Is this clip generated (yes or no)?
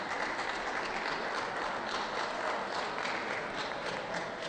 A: no